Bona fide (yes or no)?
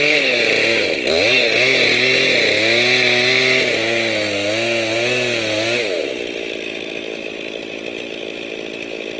yes